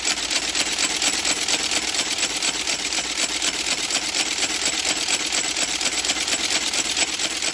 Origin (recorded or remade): remade